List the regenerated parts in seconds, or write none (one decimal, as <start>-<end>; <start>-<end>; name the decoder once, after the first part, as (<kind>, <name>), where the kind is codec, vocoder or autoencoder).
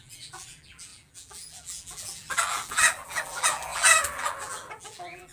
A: 0.0-5.3 (vocoder, BigVGAN v2)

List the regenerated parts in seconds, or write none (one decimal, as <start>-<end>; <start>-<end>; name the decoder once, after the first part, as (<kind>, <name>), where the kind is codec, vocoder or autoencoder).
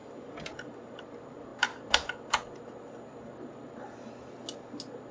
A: 0.0-1.0 (vocoder, BigVGAN v2); 1.5-2.3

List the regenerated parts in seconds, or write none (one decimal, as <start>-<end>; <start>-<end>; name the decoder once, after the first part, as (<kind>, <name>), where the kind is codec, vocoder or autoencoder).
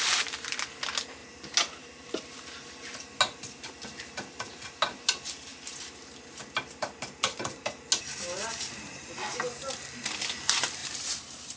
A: 10.8-11.6 (vocoder, BigVGAN v2)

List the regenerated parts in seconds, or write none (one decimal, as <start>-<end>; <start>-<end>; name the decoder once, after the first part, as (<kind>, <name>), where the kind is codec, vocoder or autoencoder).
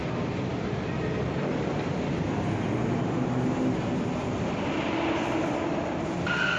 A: 0.0-2.3 (vocoder, BigVGAN v2)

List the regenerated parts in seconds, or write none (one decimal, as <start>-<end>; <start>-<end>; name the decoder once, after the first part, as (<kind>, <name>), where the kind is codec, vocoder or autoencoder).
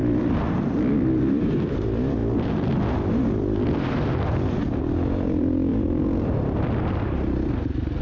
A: 0.0-1.5 (vocoder, BigVGAN v2); 5.7-7.5